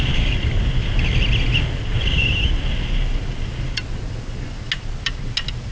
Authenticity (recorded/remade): recorded